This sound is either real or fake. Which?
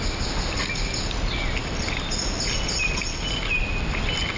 real